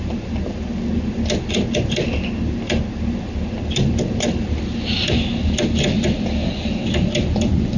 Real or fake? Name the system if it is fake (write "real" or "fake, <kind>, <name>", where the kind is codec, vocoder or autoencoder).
real